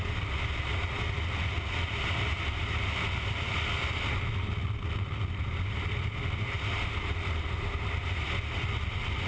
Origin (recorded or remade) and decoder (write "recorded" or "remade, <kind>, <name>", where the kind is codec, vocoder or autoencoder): recorded